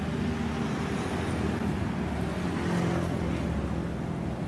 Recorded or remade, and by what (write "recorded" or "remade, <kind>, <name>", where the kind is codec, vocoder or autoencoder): recorded